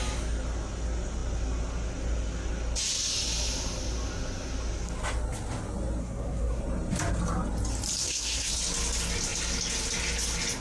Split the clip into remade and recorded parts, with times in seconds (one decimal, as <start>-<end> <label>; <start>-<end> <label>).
0.0-6.0 recorded; 6.0-6.6 remade; 6.6-8.0 recorded; 8.0-8.5 remade; 8.5-10.6 recorded